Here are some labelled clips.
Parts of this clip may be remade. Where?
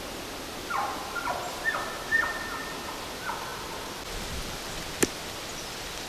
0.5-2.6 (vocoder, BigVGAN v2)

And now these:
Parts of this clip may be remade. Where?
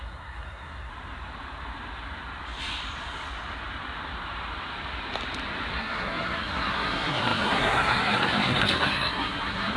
0.0-0.9 (codec, SNAC); 5.7-9.8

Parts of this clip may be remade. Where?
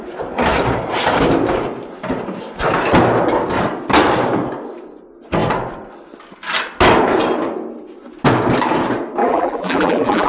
9.2-10.3 (vocoder, BigVGAN v2)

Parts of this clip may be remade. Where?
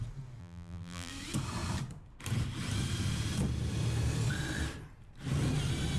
0.4-1.1 (vocoder, BigVGAN v2)